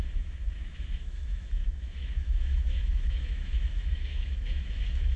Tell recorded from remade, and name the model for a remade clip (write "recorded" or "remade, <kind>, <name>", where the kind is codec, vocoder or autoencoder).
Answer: remade, autoencoder, DAC-VAE